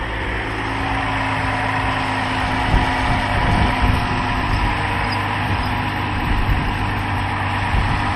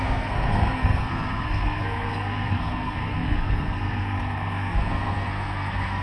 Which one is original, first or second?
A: first